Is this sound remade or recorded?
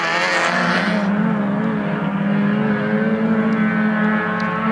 recorded